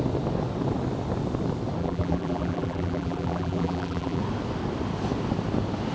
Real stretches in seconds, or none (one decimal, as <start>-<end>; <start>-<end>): 0.0-1.8; 4.2-5.9